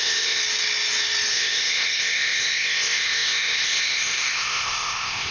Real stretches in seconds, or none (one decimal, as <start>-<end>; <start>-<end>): 0.4-1.3